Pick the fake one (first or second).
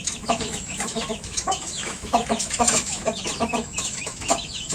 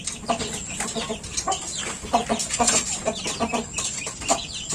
first